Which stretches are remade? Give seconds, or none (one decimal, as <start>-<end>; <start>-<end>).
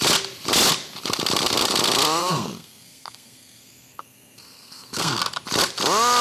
2.2-5.2